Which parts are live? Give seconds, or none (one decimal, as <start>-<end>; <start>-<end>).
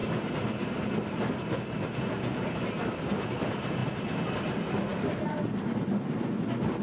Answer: 0.0-6.8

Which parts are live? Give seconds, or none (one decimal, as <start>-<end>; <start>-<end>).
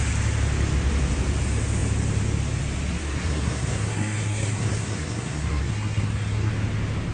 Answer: 0.0-3.0; 6.5-7.1